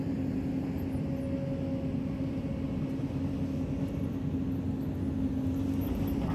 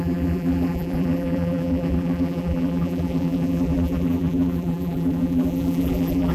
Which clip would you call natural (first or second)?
first